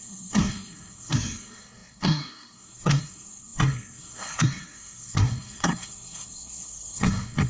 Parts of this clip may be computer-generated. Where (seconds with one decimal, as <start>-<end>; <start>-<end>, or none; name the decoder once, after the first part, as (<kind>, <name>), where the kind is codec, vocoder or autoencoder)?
0.0-7.5 (codec, SNAC)